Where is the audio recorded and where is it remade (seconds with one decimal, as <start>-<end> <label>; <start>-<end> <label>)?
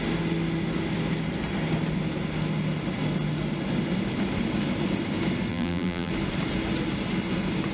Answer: 0.0-5.5 recorded; 5.5-6.1 remade; 6.1-7.7 recorded